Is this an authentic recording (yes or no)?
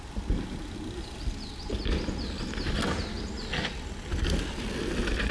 yes